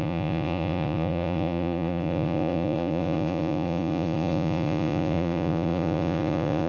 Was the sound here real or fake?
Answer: fake